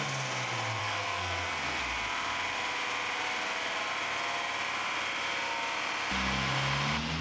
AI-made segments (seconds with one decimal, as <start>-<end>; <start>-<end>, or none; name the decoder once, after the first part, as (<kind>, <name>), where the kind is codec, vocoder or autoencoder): 0.8-1.8 (codec, SNAC)